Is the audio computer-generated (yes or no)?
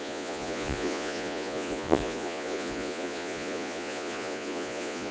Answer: yes